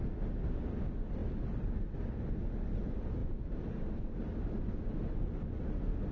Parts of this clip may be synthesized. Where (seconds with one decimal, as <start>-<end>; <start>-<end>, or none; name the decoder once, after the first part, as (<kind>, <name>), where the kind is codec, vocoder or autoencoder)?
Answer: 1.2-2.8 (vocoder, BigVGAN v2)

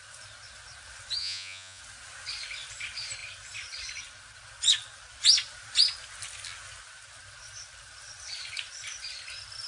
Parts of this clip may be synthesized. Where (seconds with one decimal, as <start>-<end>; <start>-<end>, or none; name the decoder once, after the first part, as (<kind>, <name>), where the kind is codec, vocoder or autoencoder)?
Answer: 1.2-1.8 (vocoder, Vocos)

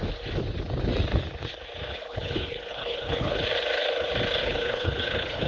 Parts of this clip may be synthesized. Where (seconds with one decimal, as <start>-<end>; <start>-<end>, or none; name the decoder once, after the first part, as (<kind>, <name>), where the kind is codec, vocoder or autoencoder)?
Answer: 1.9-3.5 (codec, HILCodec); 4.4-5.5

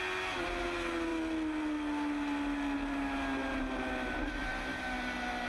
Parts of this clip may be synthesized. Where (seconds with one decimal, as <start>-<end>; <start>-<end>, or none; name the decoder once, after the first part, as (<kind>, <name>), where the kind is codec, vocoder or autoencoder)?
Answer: none

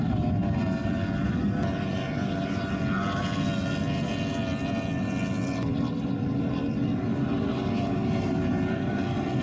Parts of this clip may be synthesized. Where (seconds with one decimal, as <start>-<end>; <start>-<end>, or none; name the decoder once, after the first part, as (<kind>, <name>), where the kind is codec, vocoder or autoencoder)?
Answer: none

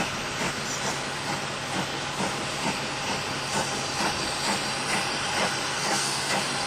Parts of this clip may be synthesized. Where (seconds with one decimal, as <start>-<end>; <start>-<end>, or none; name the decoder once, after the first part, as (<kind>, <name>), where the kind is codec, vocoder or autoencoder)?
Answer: 5.7-6.3 (codec, SNAC)